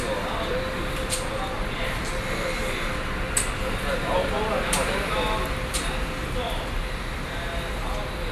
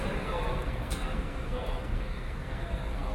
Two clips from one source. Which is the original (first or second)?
first